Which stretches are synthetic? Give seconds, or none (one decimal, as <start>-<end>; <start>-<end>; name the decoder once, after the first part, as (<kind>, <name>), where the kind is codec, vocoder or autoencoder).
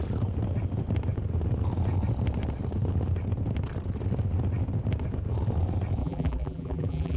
6.0-7.2 (vocoder, BigVGAN v2)